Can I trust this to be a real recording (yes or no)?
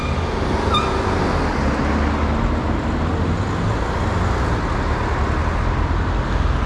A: yes